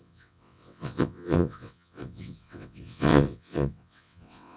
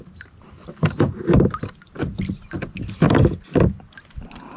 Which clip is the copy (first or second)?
first